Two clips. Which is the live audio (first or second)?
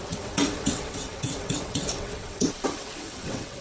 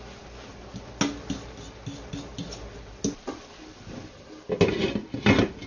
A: second